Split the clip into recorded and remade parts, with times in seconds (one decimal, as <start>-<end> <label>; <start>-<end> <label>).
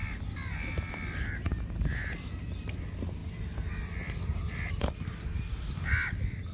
0.0-6.5 recorded